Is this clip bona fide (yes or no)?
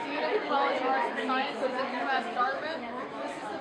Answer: no